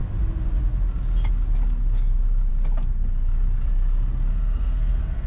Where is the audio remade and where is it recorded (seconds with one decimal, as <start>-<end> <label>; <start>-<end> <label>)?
0.0-4.3 recorded; 4.3-5.3 remade